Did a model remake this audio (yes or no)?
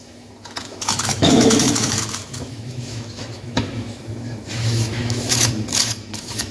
yes